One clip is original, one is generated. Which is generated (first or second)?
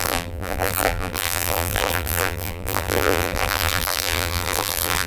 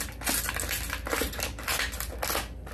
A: first